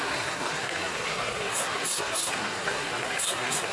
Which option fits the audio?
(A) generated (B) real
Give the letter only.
A